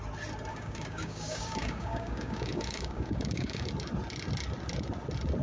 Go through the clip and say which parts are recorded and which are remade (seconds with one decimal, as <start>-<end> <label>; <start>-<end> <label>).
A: 0.0-0.5 recorded; 0.5-3.7 remade; 3.7-5.4 recorded